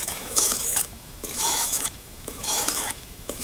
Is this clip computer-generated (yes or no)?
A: yes